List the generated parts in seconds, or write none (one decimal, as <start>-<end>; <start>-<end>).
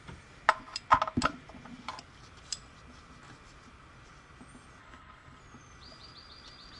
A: 4.8-5.4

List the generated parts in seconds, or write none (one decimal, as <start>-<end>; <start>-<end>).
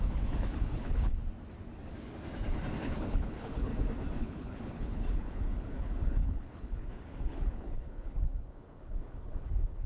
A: 0.0-1.2; 2.8-3.7; 4.2-9.9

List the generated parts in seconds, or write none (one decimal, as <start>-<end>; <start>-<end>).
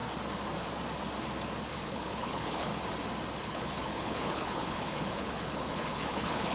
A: 1.7-2.7; 3.4-6.5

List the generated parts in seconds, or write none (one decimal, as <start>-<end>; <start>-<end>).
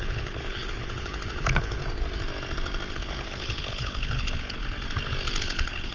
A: 0.0-1.8; 2.9-4.6; 5.4-5.9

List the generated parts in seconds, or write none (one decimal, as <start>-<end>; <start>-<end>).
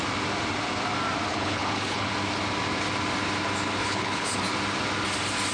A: 1.3-2.1; 3.8-4.4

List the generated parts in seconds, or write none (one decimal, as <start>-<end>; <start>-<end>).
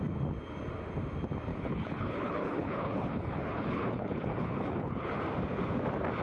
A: 1.5-5.2